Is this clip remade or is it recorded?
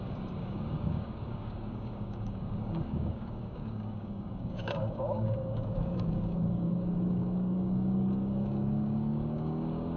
remade